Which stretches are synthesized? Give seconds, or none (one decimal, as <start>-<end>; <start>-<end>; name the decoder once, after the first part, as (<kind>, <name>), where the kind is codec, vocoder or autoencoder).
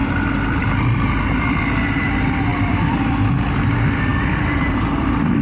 0.0-1.6 (vocoder, BigVGAN v2); 2.5-3.3; 4.1-5.4